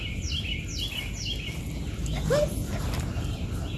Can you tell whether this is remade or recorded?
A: recorded